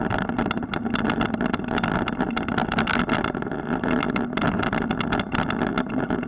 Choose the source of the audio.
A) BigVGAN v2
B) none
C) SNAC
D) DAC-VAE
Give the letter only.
B